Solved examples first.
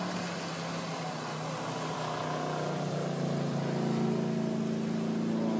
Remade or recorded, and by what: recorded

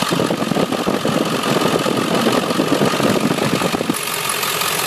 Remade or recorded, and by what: recorded